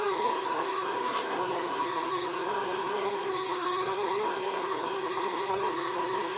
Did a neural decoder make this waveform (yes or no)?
yes